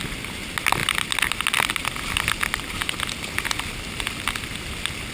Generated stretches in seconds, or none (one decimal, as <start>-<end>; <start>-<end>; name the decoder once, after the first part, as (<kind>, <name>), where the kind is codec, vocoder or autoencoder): none